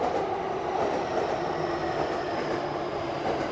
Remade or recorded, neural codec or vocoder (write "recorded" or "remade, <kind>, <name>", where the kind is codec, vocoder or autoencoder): recorded